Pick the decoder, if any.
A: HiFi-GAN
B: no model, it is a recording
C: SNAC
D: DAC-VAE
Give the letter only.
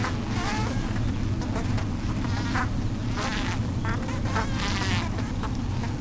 B